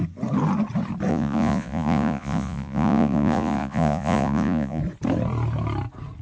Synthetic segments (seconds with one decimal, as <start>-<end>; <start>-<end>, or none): 1.1-4.8